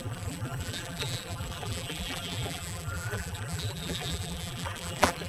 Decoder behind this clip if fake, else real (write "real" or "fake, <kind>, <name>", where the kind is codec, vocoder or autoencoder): fake, vocoder, BigVGAN v2